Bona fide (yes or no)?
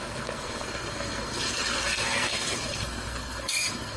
no